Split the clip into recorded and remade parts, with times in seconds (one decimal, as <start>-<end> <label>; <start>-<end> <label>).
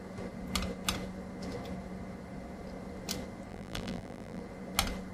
0.0-3.5 recorded; 3.5-4.4 remade; 4.4-5.1 recorded